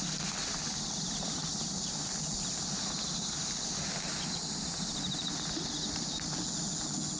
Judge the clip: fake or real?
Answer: real